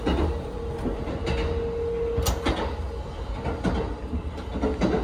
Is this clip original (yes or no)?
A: yes